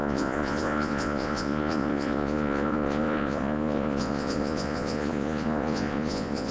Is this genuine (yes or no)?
no